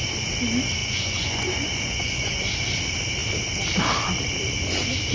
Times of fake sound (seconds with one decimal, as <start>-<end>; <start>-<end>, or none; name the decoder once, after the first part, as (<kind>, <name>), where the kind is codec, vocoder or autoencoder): 0.8-2.4 (vocoder, Vocos)